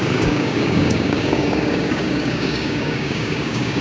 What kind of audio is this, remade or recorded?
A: remade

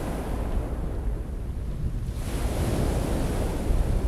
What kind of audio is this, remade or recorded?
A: recorded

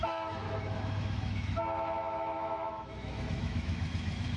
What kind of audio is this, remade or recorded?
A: remade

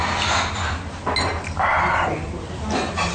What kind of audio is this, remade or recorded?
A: recorded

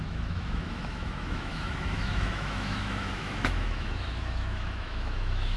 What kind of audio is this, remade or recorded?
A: remade